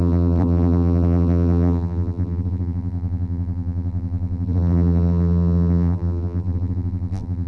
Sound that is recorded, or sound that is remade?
remade